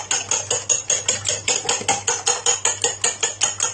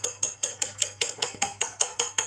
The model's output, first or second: second